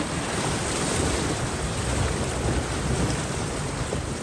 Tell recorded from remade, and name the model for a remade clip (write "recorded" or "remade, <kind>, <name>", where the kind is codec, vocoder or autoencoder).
remade, vocoder, BigVGAN v2